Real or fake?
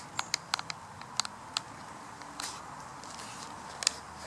real